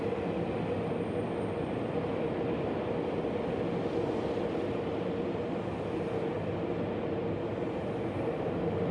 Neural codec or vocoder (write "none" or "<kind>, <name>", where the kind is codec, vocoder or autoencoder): none